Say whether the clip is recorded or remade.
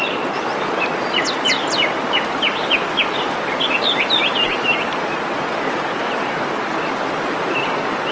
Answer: recorded